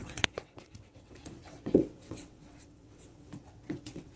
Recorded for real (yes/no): no